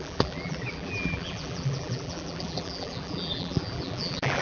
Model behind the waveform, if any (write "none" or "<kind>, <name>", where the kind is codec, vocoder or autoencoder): vocoder, BigVGAN v2